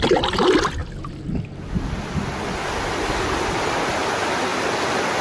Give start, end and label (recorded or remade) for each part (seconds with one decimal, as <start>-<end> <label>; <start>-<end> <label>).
0.0-5.2 recorded